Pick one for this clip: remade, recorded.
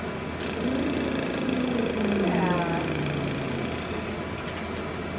recorded